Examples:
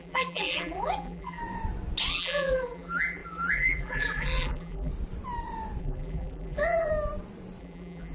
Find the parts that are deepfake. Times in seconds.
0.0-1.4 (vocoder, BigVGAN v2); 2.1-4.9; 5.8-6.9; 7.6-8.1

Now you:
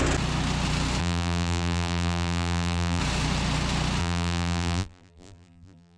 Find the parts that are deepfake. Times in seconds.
1.0-3.0 (vocoder, BigVGAN v2); 4.0-6.0